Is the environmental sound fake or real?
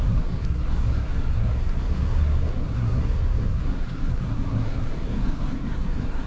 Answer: fake